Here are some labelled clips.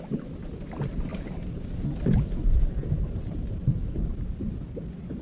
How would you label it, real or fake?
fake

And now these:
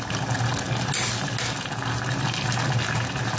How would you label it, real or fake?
real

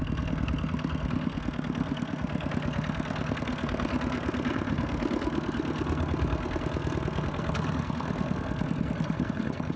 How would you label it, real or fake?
fake